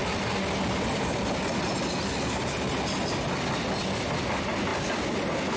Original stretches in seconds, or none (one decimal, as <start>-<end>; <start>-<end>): 0.0-5.6